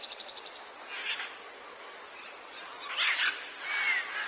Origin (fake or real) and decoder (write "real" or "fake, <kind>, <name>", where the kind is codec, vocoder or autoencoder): real